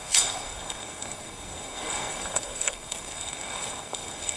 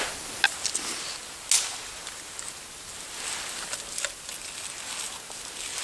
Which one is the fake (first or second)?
first